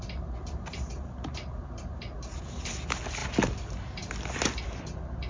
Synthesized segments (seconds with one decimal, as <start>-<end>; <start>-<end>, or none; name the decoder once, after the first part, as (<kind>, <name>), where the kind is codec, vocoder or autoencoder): none